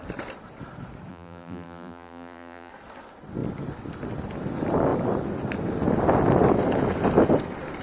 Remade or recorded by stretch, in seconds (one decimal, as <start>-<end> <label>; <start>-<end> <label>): 0.0-1.1 recorded; 1.1-2.7 remade; 2.7-7.8 recorded